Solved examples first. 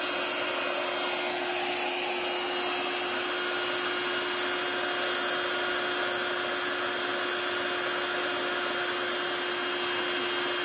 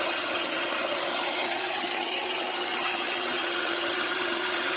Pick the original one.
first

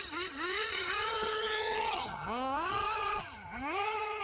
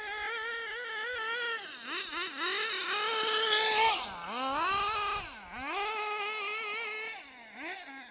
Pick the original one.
second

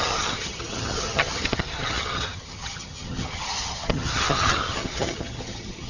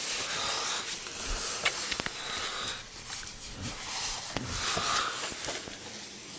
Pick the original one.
second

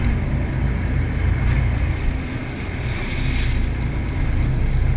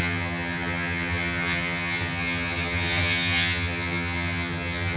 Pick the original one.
first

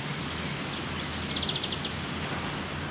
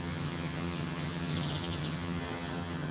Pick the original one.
first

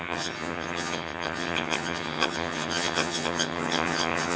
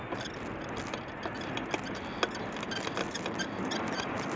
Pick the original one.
second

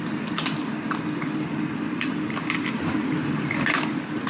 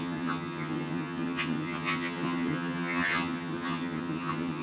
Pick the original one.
first